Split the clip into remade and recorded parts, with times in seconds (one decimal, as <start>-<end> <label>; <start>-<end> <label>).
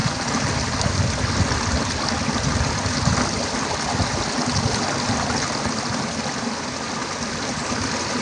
0.0-8.2 recorded